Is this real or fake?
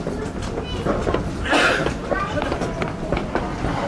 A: real